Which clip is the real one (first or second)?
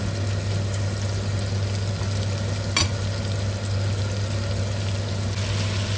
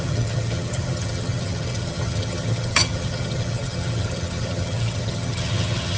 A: first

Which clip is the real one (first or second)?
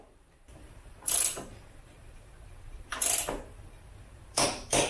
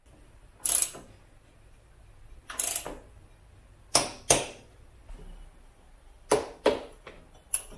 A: second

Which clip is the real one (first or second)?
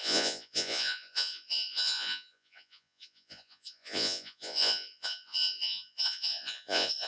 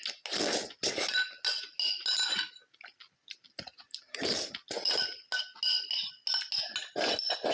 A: second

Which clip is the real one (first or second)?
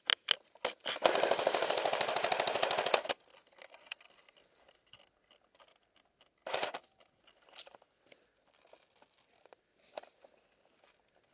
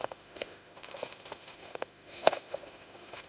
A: first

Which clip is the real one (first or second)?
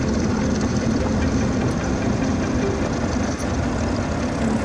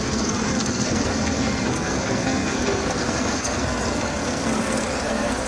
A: first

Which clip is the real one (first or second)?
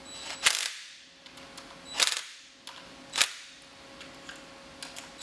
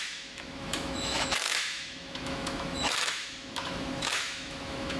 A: first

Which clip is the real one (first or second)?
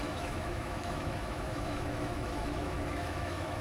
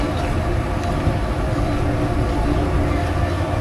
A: second